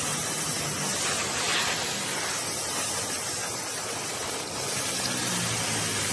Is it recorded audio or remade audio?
recorded